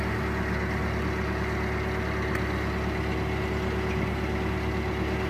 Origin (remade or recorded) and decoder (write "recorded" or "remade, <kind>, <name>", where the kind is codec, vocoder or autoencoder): recorded